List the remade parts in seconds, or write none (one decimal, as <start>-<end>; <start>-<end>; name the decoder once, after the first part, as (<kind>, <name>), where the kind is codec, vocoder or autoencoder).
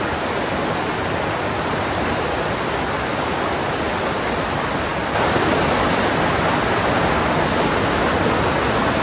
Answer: none